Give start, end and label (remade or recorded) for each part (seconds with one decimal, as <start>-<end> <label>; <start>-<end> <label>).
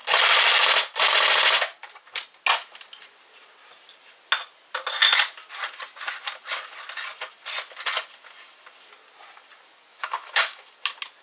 0.0-9.9 recorded; 9.9-10.7 remade; 10.7-11.2 recorded